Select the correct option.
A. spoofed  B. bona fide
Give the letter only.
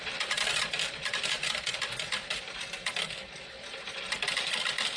B